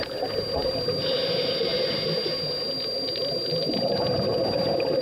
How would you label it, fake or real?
real